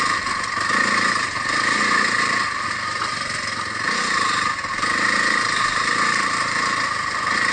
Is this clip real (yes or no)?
yes